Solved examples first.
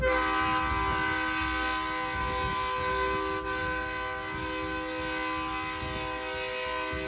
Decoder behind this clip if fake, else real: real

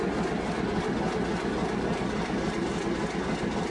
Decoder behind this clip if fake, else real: real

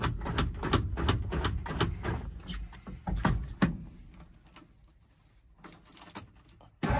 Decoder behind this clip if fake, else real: real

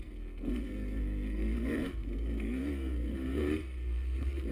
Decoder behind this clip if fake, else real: fake, codec, SNAC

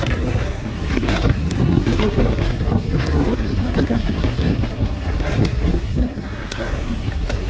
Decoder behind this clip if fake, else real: fake, codec, SNAC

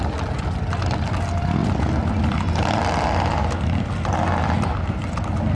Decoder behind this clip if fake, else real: real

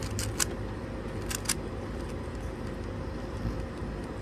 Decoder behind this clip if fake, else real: real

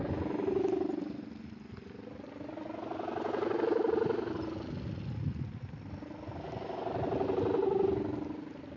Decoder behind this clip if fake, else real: real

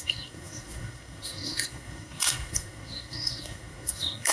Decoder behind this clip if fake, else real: fake, codec, SNAC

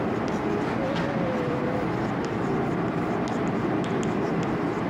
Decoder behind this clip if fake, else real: real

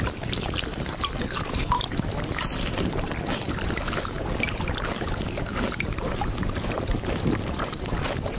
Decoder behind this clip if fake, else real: real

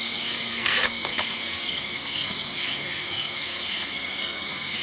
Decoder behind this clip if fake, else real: fake, codec, SNAC